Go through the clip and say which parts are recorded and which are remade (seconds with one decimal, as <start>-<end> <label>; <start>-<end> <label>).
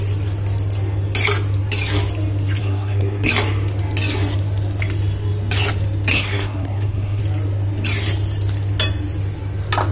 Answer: 0.0-2.6 recorded; 2.6-3.3 remade; 3.3-6.1 recorded; 6.1-7.2 remade; 7.2-9.9 recorded